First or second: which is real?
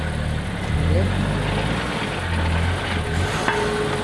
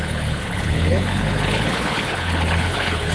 first